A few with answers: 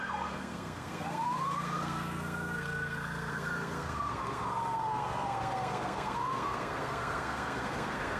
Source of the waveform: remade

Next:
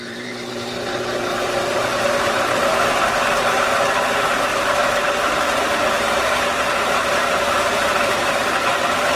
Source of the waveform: remade